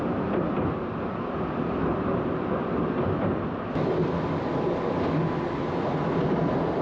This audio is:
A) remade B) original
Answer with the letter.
B